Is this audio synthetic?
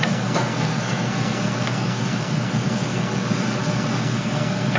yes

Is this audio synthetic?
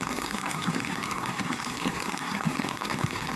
yes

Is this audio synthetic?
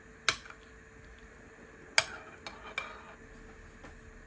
no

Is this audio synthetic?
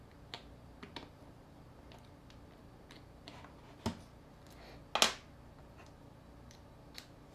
no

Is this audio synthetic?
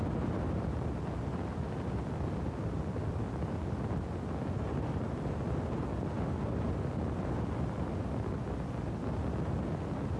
no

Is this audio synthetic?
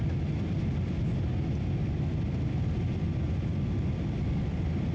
no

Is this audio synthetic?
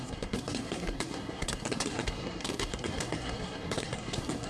yes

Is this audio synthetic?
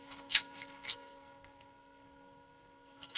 yes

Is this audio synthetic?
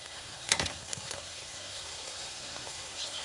yes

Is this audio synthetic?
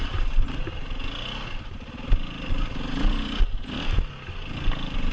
no